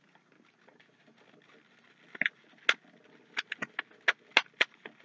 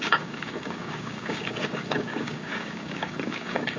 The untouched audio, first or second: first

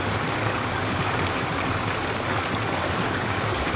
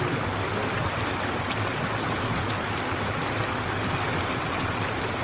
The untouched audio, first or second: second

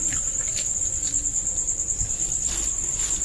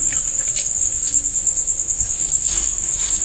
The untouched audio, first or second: first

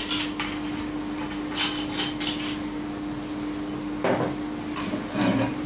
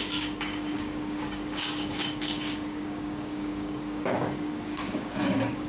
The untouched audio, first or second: first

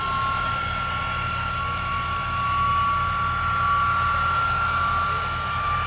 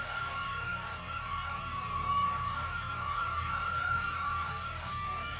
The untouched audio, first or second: first